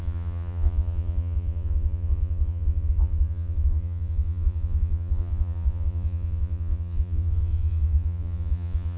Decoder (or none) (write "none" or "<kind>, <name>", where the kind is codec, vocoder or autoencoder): vocoder, Vocos